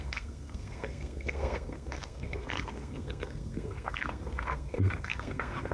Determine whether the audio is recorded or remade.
remade